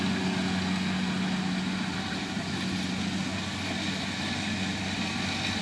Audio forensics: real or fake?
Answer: real